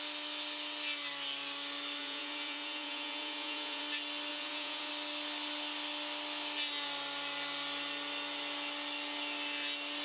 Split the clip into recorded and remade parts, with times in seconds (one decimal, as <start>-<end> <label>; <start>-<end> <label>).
0.0-2.0 recorded; 2.0-3.8 remade; 3.8-4.3 recorded; 4.3-4.9 remade; 4.9-10.0 recorded